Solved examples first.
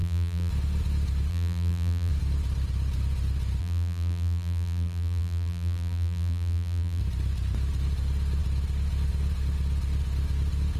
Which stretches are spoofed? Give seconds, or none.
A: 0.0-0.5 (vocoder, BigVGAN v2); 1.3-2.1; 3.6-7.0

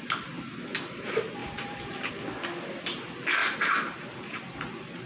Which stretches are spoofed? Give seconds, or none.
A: 1.4-2.1 (vocoder, BigVGAN v2); 3.4-4.6

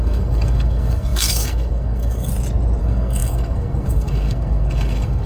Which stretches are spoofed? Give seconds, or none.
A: 0.0-2.3 (codec, SNAC); 2.8-5.3

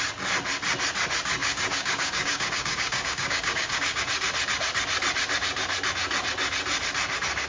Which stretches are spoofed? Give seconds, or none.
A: 1.4-4.0 (codec, DAC)